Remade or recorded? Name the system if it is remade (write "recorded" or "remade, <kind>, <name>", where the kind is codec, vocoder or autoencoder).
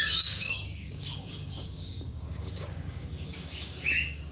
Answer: remade, codec, DAC